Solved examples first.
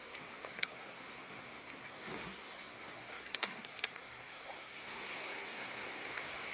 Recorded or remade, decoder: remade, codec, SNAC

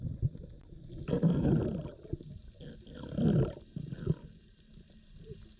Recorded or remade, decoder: recorded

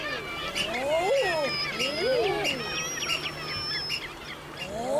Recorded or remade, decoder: recorded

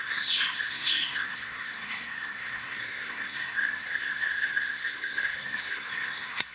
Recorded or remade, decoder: remade, codec, SNAC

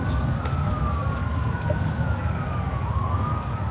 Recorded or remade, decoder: remade, codec, DAC